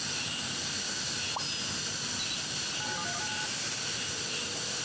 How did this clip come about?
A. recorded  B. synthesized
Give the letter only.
A